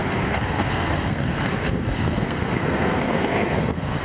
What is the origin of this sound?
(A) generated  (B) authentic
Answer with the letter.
A